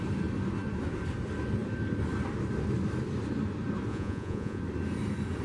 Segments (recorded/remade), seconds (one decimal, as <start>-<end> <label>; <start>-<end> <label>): 0.0-3.9 recorded; 3.9-4.6 remade; 4.6-5.4 recorded